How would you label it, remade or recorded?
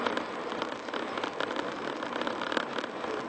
recorded